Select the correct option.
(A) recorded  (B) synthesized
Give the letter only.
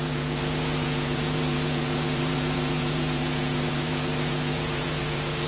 B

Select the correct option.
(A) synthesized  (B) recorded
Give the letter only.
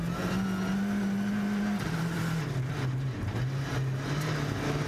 B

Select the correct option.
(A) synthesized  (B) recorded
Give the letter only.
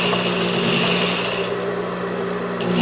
B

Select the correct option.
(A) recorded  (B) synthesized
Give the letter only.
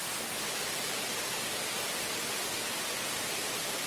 A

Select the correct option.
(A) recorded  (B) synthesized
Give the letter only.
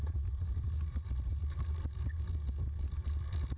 A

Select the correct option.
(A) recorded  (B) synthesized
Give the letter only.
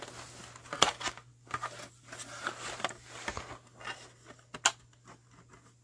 A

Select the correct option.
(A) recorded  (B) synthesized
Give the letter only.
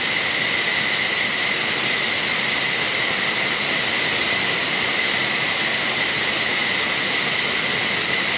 A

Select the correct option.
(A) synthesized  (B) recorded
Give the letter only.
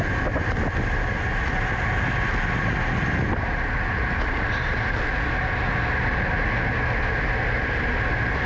B